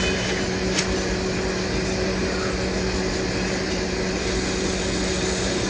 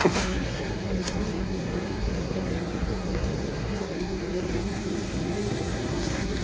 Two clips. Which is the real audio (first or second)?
first